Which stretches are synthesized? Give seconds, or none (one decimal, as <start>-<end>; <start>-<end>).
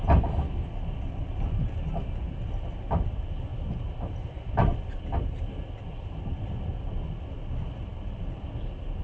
3.5-4.9; 5.9-7.4